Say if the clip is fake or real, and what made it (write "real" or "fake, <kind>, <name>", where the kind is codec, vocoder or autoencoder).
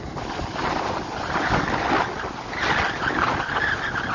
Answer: real